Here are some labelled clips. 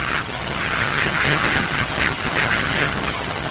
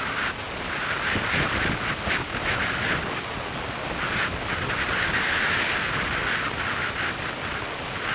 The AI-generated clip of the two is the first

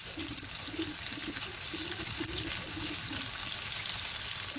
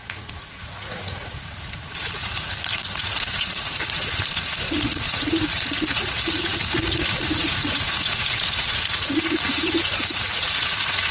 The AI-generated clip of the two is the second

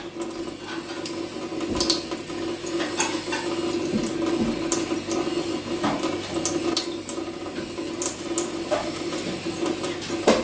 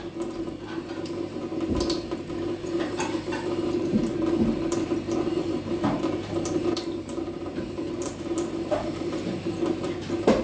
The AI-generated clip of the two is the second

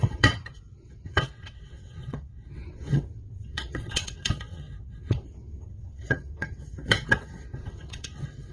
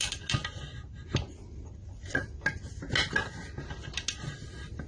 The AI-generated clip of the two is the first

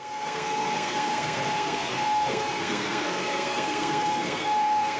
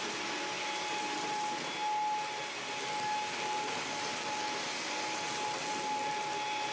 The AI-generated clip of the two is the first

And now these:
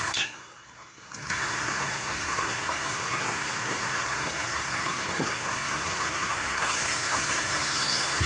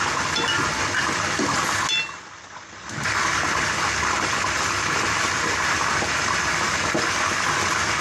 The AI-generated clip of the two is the first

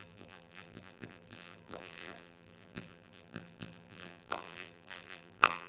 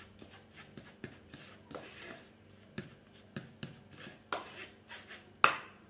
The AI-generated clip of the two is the first